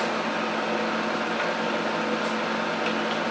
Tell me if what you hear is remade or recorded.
recorded